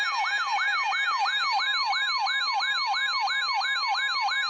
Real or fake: real